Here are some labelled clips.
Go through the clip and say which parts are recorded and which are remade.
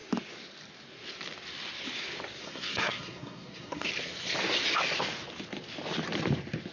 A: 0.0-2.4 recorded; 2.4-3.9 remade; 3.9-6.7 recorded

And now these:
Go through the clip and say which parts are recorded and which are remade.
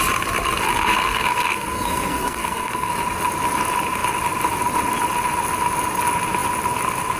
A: 0.0-0.9 recorded; 0.9-2.9 remade; 2.9-7.2 recorded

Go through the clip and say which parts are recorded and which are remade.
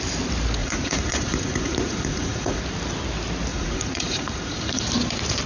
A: 0.0-0.6 recorded; 0.6-2.6 remade; 2.6-3.5 recorded; 3.5-4.8 remade; 4.8-5.5 recorded